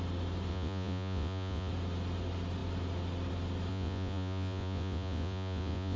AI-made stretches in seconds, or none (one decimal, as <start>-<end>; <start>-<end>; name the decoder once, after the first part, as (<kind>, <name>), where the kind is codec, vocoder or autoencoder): 0.5-1.7 (vocoder, Vocos); 3.7-6.0